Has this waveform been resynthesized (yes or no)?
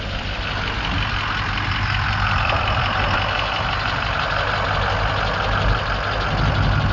no